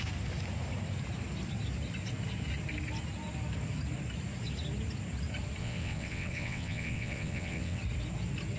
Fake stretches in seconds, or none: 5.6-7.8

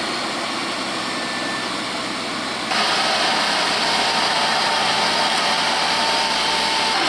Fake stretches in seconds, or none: none

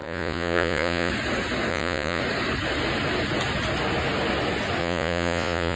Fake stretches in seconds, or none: 0.0-1.1; 1.7-2.2; 4.8-5.8

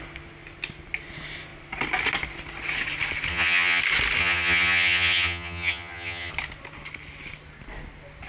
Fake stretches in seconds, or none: 3.3-3.8; 4.2-6.3

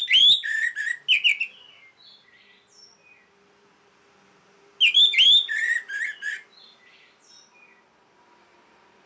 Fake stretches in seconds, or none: none